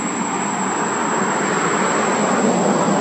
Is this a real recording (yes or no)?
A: yes